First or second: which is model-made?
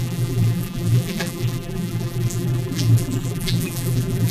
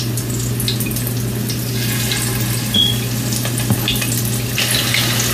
first